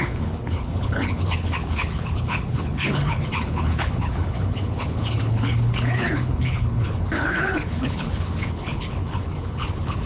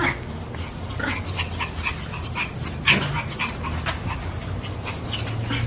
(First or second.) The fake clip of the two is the first